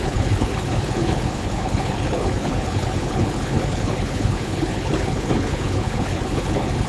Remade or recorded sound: remade